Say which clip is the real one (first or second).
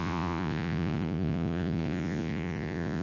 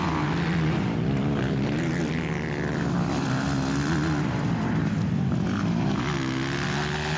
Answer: second